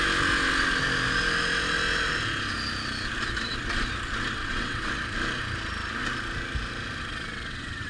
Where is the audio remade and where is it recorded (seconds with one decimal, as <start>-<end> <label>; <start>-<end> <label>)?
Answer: 0.0-4.4 recorded; 4.4-4.9 remade; 4.9-7.1 recorded; 7.1-7.9 remade